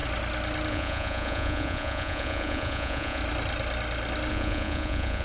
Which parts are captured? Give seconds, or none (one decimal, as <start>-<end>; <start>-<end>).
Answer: 0.0-0.7; 3.2-4.3